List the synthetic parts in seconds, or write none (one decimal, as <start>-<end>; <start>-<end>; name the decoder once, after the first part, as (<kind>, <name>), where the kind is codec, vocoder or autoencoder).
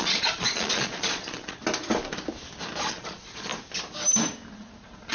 0.0-1.6 (vocoder, Vocos); 2.9-3.5; 4.5-5.1